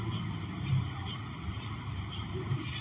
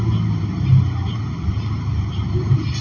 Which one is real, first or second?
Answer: second